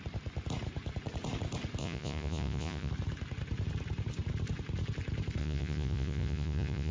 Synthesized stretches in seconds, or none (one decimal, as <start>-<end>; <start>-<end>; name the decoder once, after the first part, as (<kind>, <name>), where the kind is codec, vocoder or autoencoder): 1.8-2.9 (vocoder, Vocos); 5.4-6.9